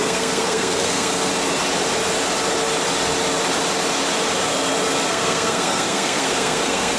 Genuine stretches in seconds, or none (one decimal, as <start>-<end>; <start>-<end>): 1.3-5.1